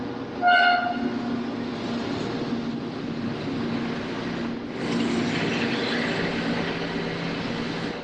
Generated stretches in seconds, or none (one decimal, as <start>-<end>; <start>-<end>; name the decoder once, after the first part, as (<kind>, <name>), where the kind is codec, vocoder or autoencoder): none